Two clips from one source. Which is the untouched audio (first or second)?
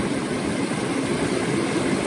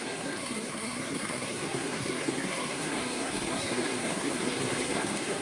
first